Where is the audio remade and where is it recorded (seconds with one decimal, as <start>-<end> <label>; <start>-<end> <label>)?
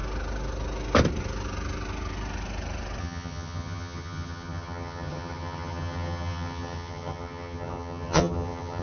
0.0-3.0 recorded; 3.0-8.8 remade